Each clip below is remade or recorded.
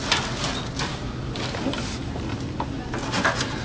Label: recorded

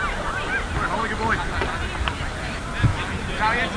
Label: recorded